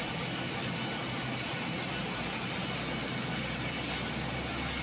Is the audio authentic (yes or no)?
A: yes